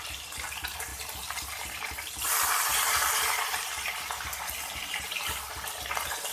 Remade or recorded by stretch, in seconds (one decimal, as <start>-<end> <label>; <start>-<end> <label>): 0.0-6.3 remade